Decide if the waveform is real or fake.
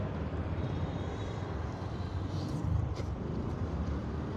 fake